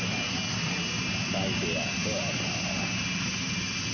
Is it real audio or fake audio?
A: real